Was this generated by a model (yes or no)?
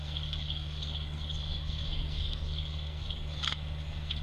yes